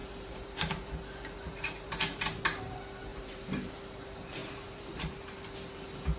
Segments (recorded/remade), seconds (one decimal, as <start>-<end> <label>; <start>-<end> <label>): 0.0-2.4 remade; 2.4-3.1 recorded; 3.1-3.8 remade; 3.8-4.4 recorded; 4.4-5.2 remade; 5.2-6.2 recorded

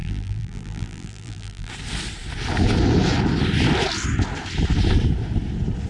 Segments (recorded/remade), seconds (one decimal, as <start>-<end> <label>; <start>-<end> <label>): 0.0-1.7 remade; 1.7-5.9 recorded

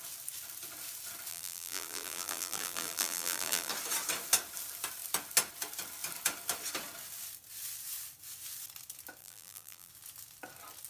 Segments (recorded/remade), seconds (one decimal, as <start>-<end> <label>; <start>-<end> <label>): 0.0-1.3 recorded; 1.3-3.7 remade; 3.7-9.2 recorded; 9.2-9.9 remade; 9.9-10.9 recorded

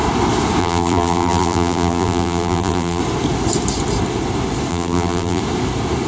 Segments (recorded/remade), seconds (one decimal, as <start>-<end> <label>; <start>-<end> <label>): 0.0-0.6 recorded; 0.6-3.0 remade; 3.0-4.7 recorded; 4.7-5.4 remade; 5.4-6.1 recorded

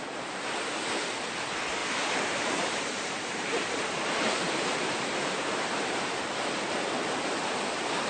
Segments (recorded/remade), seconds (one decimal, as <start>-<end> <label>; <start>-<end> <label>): 0.0-1.8 recorded; 1.8-5.9 remade; 5.9-8.1 recorded

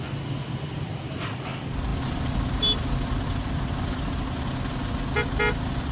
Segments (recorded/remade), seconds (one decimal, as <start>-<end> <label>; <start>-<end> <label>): 0.0-1.9 recorded; 1.9-4.1 remade; 4.1-5.9 recorded